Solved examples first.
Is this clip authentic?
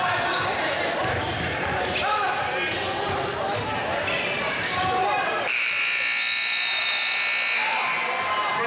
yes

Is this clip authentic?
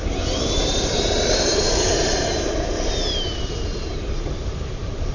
no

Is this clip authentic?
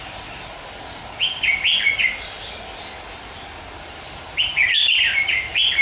yes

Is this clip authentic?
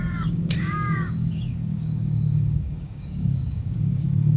no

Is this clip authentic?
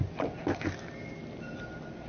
yes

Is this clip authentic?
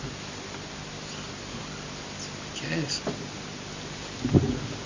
yes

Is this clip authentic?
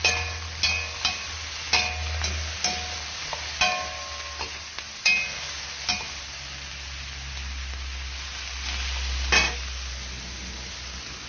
yes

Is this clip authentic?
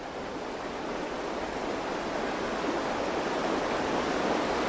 yes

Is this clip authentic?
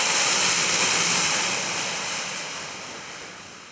yes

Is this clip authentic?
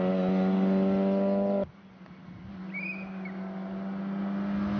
yes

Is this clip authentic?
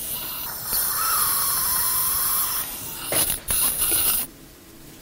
no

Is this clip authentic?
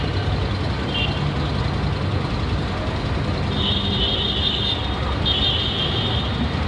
yes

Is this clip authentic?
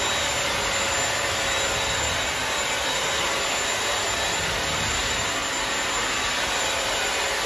yes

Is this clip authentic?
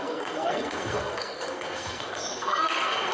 no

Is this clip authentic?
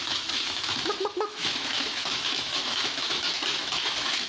no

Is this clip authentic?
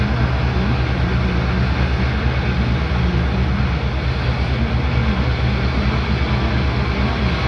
yes